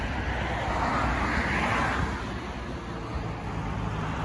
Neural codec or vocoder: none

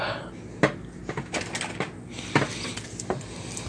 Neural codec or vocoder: none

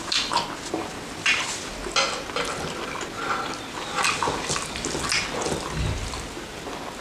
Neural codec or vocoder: none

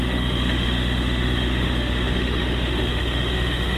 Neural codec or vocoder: autoencoder, DAC-VAE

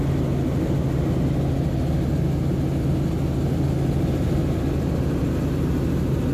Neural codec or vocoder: none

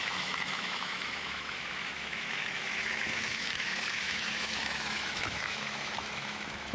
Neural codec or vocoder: autoencoder, DAC-VAE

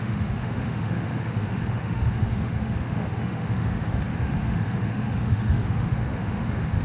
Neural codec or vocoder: autoencoder, DAC-VAE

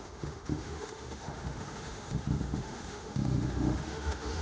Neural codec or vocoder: autoencoder, DAC-VAE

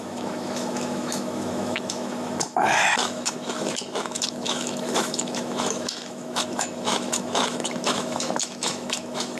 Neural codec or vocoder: autoencoder, DAC-VAE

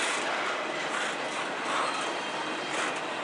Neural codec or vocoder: none